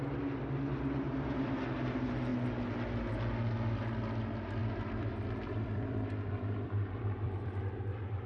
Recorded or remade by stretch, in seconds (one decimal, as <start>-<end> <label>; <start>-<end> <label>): 0.0-4.6 recorded; 4.6-7.8 remade; 7.8-8.3 recorded